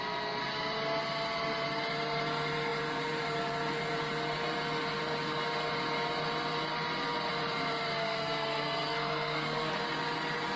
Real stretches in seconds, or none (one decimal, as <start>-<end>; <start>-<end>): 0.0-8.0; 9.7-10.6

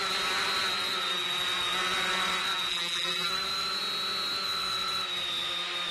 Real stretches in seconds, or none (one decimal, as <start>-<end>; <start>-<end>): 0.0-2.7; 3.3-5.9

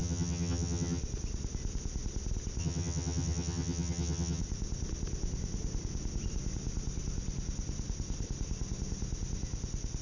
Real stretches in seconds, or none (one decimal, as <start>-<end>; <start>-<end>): 1.0-2.6; 4.4-10.0

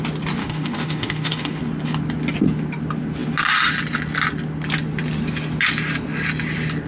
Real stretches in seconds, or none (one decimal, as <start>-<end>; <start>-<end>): 0.0-0.4; 1.6-6.9

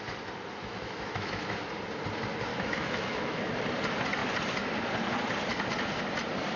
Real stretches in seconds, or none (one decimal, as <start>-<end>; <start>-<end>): 0.0-0.6; 1.4-2.5; 3.5-6.6

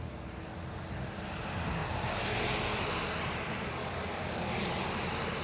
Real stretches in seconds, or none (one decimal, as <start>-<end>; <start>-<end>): 0.0-3.5; 4.8-5.4